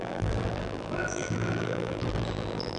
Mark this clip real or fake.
fake